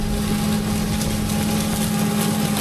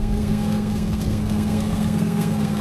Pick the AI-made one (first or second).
second